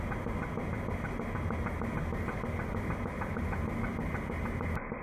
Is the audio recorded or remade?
recorded